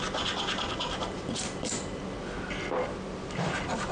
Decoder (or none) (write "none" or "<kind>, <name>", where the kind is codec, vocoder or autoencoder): none